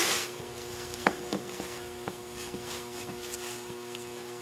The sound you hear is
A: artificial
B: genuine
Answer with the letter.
A